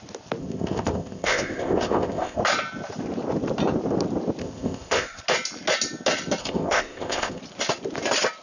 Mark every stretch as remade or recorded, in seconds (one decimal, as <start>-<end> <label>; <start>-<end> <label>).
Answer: 0.0-0.4 recorded; 0.4-2.4 remade; 2.4-4.4 recorded; 4.4-5.2 remade; 5.2-6.4 recorded; 6.4-7.4 remade; 7.4-8.4 recorded